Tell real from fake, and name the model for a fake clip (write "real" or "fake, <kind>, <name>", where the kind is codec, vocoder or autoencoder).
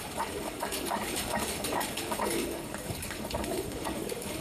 fake, codec, DAC